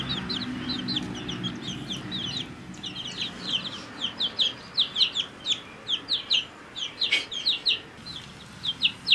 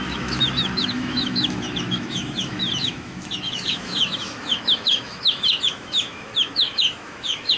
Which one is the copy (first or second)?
second